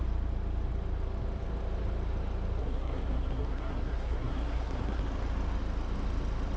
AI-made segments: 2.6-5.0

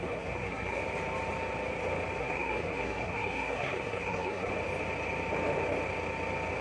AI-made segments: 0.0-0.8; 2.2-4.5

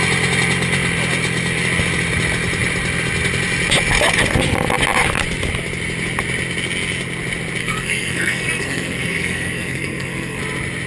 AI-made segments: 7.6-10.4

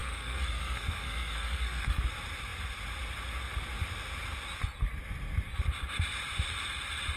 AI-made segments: 0.0-2.0